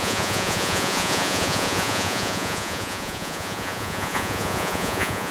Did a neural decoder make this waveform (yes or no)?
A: yes